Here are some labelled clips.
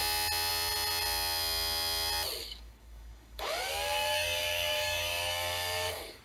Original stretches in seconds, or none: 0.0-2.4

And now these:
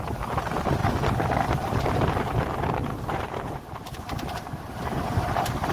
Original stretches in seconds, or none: 0.0-2.9

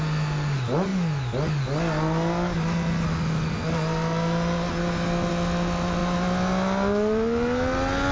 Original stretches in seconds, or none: 0.0-8.1

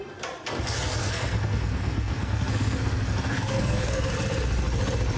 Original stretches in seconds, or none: 0.0-1.0; 4.1-5.2

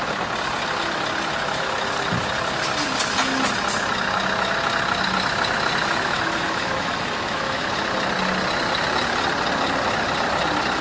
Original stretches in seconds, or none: 0.0-5.8; 7.7-10.8

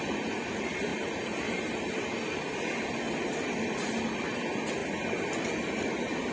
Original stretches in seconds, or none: 0.0-6.3

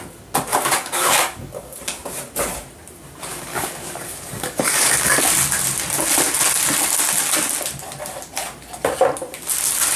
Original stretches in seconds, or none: 0.0-0.5; 1.8-3.3; 5.1-10.0

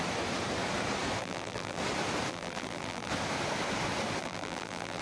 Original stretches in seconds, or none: 0.0-1.2; 1.8-2.3; 3.1-4.2